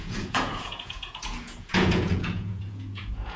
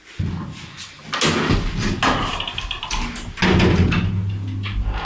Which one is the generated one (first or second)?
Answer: first